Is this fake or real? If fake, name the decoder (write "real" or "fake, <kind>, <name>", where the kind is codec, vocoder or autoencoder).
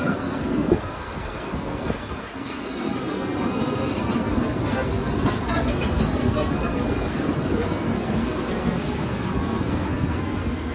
fake, codec, SNAC